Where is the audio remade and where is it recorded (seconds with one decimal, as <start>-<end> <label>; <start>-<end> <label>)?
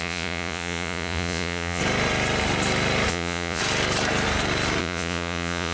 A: 0.0-1.8 remade; 1.8-3.1 recorded; 3.1-3.6 remade; 3.6-4.8 recorded; 4.8-5.7 remade